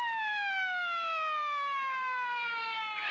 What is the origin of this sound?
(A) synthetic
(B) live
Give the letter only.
B